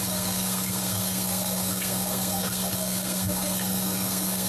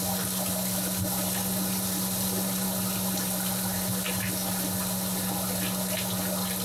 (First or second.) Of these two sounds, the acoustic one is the second